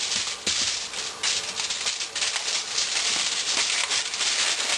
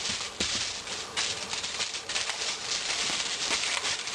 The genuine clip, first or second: first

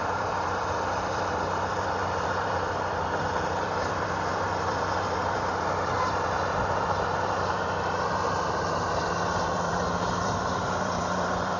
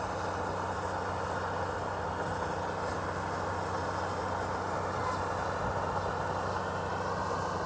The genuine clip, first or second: second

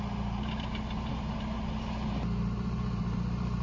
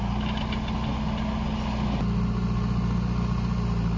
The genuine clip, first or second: second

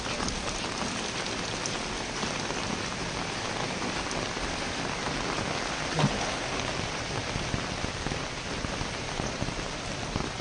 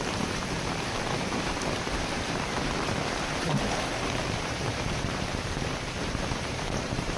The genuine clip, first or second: first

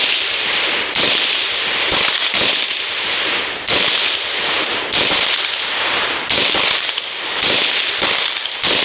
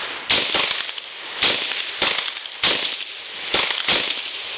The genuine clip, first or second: second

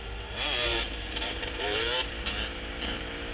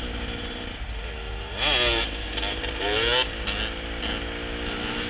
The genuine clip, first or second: second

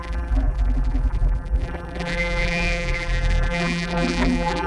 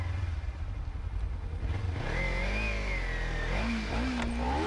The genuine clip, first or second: second